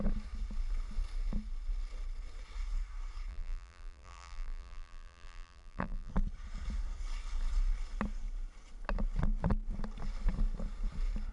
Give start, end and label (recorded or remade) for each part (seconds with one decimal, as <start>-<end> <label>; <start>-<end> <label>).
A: 0.0-3.3 recorded; 3.3-6.1 remade; 6.1-11.3 recorded